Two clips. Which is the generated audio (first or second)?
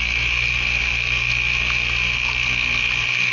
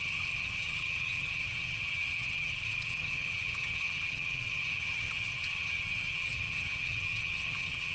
second